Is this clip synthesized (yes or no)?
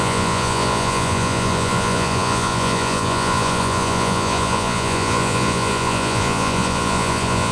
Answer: yes